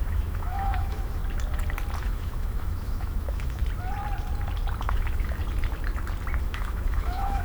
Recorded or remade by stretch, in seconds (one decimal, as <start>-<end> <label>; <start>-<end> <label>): 0.0-1.2 remade; 1.2-2.0 recorded; 2.0-3.6 remade; 3.6-4.8 recorded; 4.8-5.4 remade; 5.4-6.4 recorded; 6.4-7.4 remade